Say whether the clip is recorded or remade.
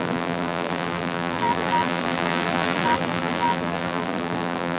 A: remade